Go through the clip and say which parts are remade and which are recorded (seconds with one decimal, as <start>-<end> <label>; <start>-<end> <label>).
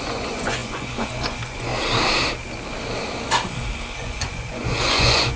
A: 0.0-1.7 remade; 1.7-4.0 recorded; 4.0-5.4 remade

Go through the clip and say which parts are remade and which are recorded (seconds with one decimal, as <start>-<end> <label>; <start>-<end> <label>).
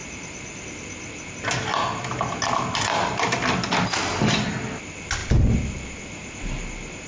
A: 0.0-7.1 recorded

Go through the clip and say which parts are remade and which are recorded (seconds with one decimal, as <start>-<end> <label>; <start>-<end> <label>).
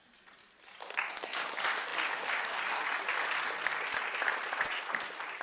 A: 0.0-4.3 recorded; 4.3-4.8 remade; 4.8-5.4 recorded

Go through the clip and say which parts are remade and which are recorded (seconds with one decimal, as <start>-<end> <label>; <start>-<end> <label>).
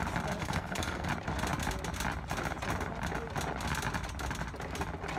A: 0.0-0.4 recorded; 0.4-1.1 remade; 1.1-5.2 recorded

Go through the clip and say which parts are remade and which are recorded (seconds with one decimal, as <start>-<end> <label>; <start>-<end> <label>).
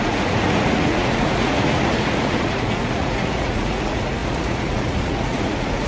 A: 0.0-5.9 remade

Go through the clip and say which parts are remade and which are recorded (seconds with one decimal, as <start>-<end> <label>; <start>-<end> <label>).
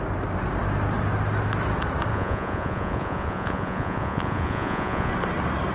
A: 0.0-2.1 recorded; 2.1-5.1 remade; 5.1-5.7 recorded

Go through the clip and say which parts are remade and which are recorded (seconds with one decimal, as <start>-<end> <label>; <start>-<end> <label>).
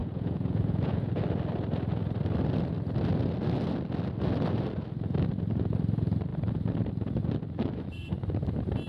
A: 0.0-1.2 remade; 1.2-8.9 recorded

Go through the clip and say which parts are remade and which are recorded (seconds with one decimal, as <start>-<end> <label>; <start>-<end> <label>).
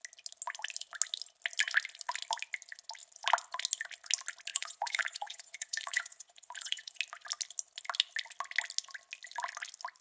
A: 0.0-4.5 recorded; 4.5-7.0 remade; 7.0-10.0 recorded